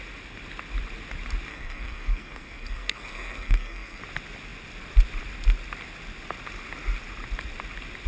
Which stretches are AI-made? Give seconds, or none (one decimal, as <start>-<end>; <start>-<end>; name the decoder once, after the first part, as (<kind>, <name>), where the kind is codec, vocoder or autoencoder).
1.5-4.0 (codec, SNAC)